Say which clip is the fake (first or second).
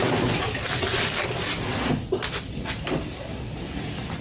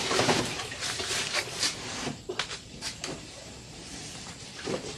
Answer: second